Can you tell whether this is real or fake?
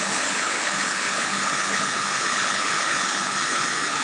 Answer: fake